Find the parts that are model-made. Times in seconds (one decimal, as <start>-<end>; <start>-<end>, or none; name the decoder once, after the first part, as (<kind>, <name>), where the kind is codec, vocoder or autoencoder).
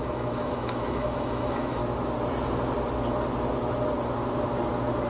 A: 0.0-1.8 (autoencoder, DAC-VAE)